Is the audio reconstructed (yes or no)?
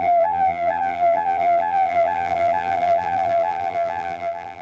yes